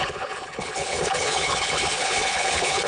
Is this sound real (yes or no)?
no